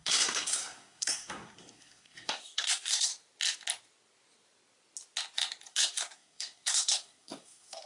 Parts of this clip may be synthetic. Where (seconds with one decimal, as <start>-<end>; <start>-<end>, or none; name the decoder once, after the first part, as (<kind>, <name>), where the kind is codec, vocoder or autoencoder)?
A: 0.0-3.1 (codec, SNAC); 5.7-7.9